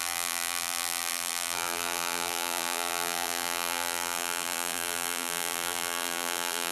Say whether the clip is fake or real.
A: fake